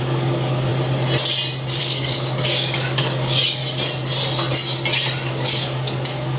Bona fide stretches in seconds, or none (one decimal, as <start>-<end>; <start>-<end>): 0.7-1.8; 3.6-5.3